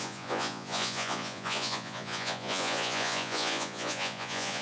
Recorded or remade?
remade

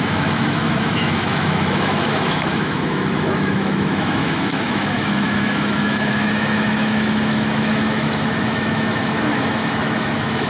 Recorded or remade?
remade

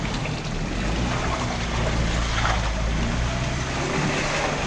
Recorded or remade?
recorded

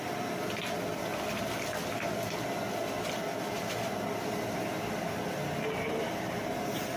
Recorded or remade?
recorded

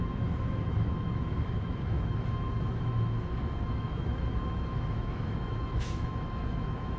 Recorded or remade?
remade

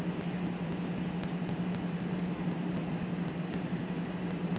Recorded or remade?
recorded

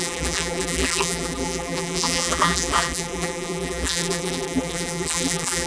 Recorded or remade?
remade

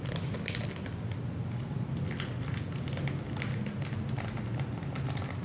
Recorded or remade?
recorded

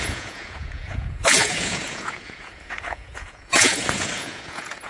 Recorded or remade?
remade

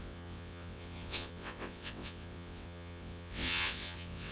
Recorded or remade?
remade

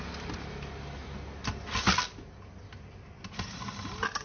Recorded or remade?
recorded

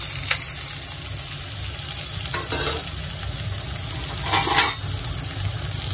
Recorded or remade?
recorded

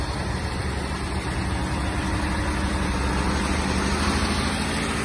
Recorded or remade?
recorded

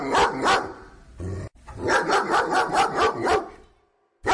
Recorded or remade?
recorded